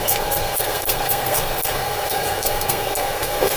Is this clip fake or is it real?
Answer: fake